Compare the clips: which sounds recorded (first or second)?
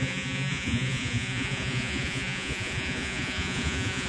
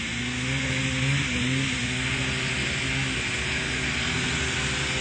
second